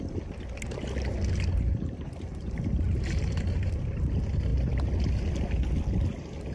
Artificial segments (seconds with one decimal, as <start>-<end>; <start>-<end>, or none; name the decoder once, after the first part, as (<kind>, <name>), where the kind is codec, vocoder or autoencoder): 2.3-4.1 (vocoder, BigVGAN v2)